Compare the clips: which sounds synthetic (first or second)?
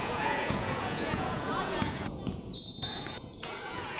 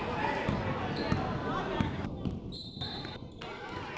first